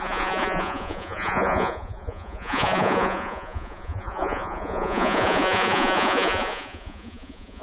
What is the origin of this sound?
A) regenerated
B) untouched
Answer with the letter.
A